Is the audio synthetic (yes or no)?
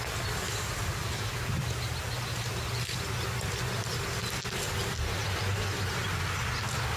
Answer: no